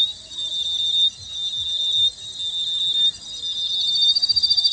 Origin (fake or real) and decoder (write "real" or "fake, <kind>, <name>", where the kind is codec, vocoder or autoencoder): real